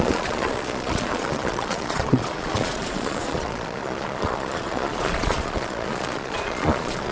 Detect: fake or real fake